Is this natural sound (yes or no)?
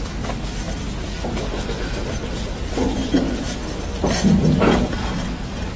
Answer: yes